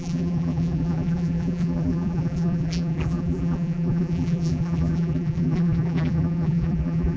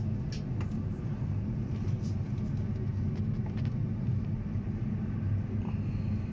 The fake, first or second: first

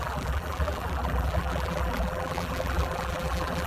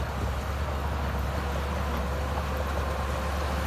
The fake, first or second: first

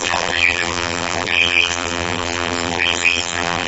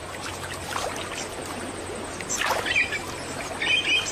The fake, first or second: first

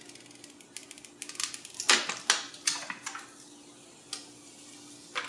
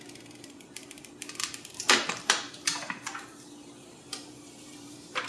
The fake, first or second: second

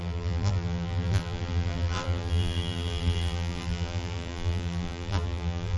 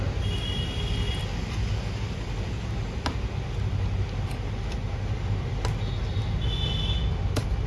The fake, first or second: first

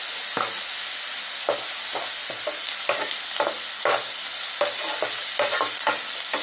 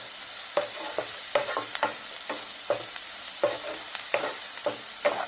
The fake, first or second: second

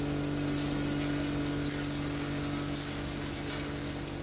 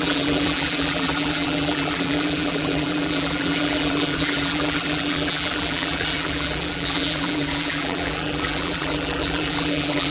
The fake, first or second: second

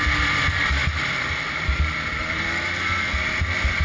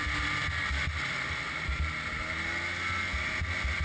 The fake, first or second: first